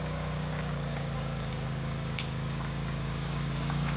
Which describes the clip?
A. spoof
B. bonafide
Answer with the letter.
A